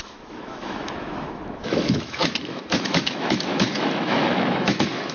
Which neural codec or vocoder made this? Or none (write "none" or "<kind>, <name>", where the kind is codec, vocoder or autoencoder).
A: autoencoder, DAC-VAE